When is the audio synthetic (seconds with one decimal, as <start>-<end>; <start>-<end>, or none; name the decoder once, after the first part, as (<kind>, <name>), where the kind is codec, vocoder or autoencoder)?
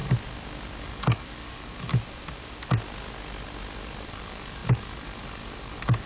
0.8-1.9 (codec, DAC); 4.1-6.1